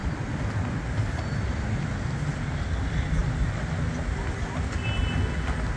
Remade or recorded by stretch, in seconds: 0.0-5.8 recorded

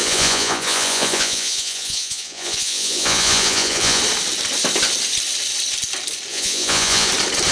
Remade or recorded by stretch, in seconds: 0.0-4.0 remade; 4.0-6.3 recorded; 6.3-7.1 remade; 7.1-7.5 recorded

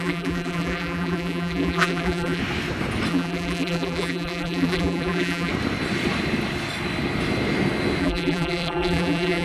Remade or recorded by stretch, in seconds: 0.0-2.4 remade; 2.4-3.1 recorded; 3.1-5.5 remade; 5.5-8.0 recorded; 8.0-9.4 remade

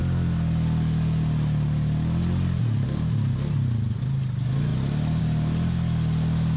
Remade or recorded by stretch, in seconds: 0.0-6.6 recorded

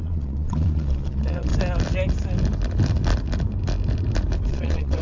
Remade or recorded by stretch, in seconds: 0.0-1.5 remade; 1.5-4.5 recorded; 4.5-5.0 remade